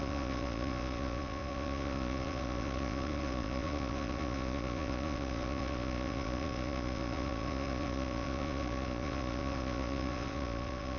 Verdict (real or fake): fake